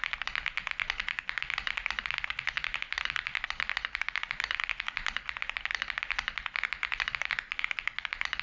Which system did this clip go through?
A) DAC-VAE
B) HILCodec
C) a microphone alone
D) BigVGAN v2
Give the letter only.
C